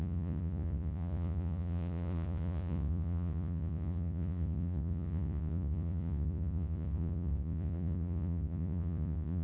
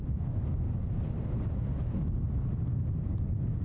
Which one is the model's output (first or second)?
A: first